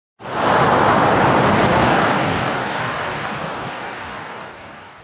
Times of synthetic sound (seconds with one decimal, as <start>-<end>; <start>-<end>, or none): 1.7-5.0